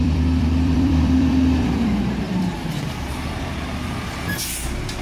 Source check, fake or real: fake